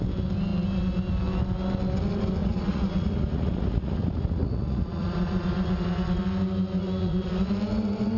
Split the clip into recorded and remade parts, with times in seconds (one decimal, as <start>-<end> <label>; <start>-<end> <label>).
0.0-2.4 recorded; 2.4-6.2 remade; 6.2-7.0 recorded; 7.0-7.5 remade; 7.5-8.2 recorded